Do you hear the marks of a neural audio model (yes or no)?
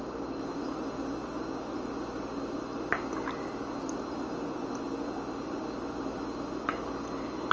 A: no